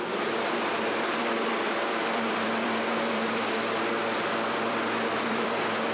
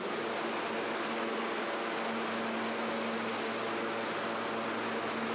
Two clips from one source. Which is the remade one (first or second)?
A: first